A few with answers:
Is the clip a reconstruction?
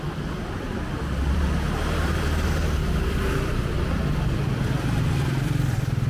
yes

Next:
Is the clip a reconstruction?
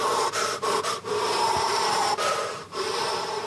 yes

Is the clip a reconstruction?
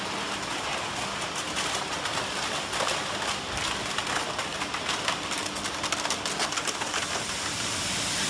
no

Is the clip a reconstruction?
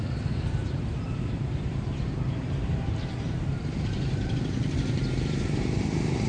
yes